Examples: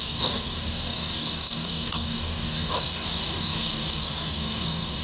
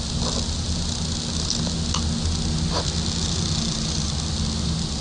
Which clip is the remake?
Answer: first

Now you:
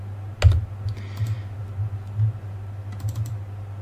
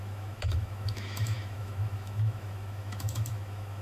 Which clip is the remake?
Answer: second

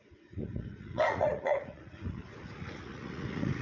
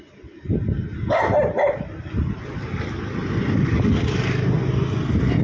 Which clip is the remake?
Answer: first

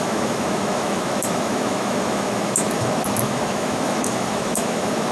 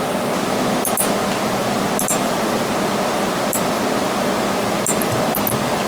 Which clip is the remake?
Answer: first